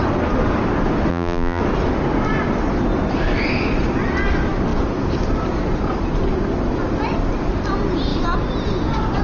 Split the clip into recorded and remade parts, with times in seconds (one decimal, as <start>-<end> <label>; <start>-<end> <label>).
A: 0.0-1.1 recorded; 1.1-1.6 remade; 1.6-9.2 recorded